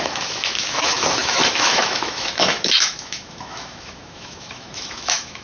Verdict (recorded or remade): remade